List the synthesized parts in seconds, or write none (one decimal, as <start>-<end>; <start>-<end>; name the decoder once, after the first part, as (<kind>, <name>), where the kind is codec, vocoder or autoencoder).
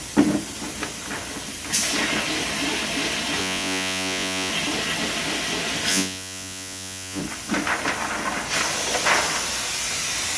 3.4-4.5 (vocoder, Vocos); 5.9-7.2